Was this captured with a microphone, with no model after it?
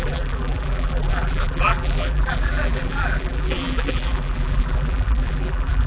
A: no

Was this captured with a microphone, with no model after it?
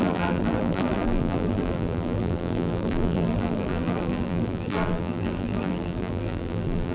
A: no